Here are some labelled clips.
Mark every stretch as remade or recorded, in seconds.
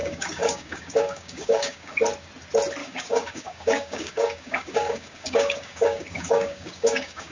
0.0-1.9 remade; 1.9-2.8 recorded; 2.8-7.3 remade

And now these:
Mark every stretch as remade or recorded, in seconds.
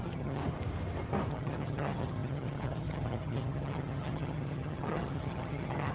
0.0-0.4 remade; 0.4-1.3 recorded; 1.3-5.9 remade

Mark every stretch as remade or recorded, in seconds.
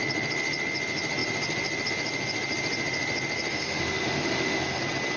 0.0-3.5 recorded; 3.5-4.8 remade; 4.8-5.2 recorded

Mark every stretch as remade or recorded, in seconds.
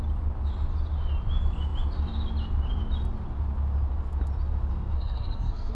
0.0-4.7 recorded; 4.7-5.7 remade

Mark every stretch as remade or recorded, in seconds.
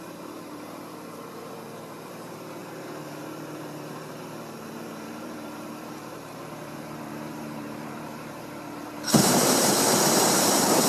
0.0-10.9 remade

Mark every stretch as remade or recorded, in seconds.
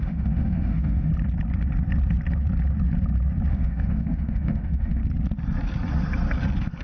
0.0-1.1 remade; 1.1-3.5 recorded; 3.5-5.0 remade; 5.0-6.8 recorded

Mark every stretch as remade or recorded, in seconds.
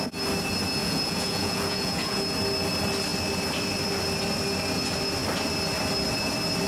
0.0-0.8 recorded; 0.8-2.2 remade; 2.2-6.7 recorded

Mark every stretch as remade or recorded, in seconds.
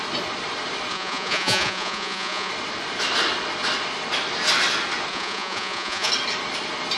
0.0-0.9 recorded; 0.9-2.5 remade; 2.5-5.1 recorded; 5.1-6.1 remade; 6.1-7.0 recorded